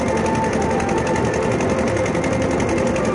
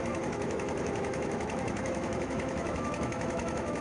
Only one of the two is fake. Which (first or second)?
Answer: second